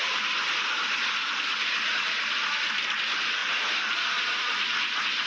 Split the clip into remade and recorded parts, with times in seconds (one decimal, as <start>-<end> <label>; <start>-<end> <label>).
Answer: 0.0-5.3 recorded